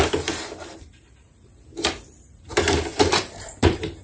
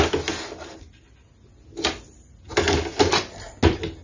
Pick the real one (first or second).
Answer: second